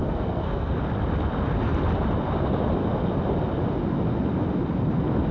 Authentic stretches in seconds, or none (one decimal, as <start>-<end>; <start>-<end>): 0.8-5.3